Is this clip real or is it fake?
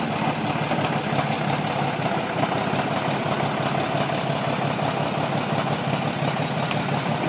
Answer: real